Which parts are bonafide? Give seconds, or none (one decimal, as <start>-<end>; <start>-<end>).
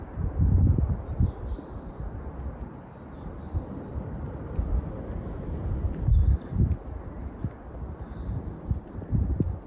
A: 0.0-0.7; 1.5-9.7